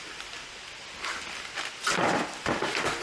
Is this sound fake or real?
real